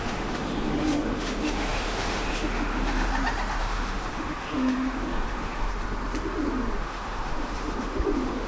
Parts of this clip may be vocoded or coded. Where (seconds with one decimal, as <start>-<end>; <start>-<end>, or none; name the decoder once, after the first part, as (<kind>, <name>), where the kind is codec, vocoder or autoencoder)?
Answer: 0.0-3.1 (autoencoder, DAC-VAE); 3.6-5.7; 6.8-8.5